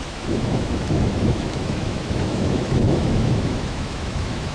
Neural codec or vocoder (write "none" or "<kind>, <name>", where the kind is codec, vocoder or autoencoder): autoencoder, DAC-VAE